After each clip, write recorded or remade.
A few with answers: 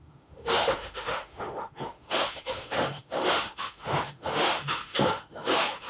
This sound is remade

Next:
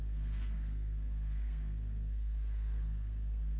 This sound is remade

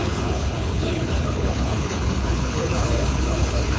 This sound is remade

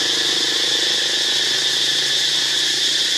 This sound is recorded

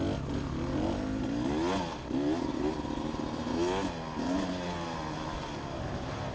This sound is recorded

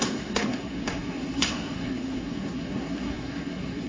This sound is remade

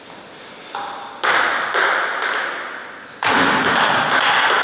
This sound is recorded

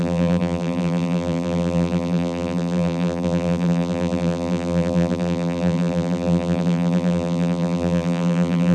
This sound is remade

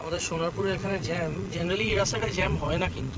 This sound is remade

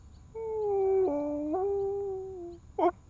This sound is recorded